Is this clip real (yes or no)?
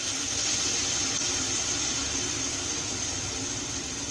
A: yes